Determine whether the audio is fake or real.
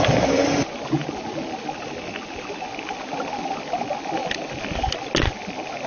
real